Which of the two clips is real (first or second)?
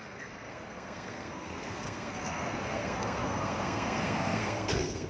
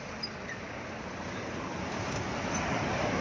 second